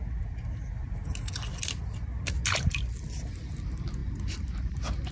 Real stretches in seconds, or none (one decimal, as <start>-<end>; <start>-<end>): 0.0-5.1